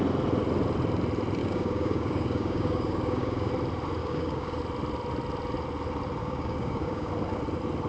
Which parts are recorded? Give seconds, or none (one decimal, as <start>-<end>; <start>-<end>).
0.0-1.4; 3.5-4.0; 4.6-6.2; 7.1-7.9